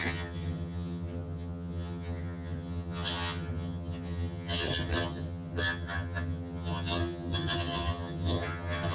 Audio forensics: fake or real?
fake